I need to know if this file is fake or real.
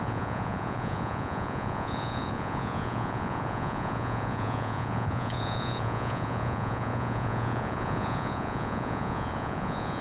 fake